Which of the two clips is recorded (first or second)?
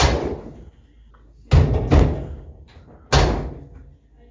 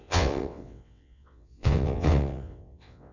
first